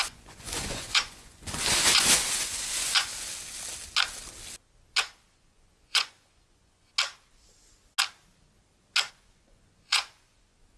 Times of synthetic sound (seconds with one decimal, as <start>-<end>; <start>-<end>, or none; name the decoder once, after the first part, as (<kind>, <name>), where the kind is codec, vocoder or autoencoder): 0.0-3.1 (vocoder, Vocos); 5.3-6.9; 9.1-10.8